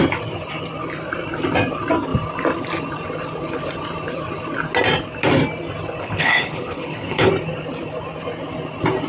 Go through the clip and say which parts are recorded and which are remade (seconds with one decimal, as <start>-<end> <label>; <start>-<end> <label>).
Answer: 0.0-6.0 recorded; 6.0-7.3 remade; 7.3-9.1 recorded